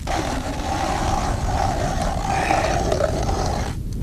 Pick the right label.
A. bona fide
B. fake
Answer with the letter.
A